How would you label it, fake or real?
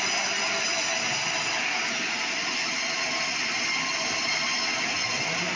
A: real